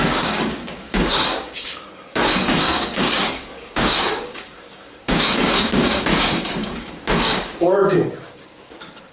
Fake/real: fake